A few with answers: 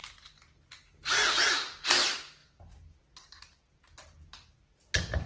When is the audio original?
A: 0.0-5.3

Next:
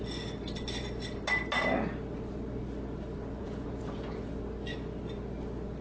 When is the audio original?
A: 0.0-3.4; 4.3-5.8

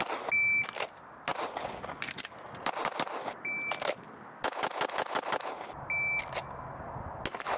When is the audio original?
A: 0.0-7.6

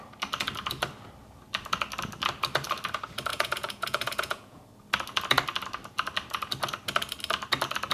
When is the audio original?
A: 0.0-3.3; 4.6-7.9